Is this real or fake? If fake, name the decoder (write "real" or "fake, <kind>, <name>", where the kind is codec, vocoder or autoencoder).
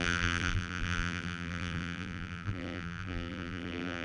fake, vocoder, BigVGAN v2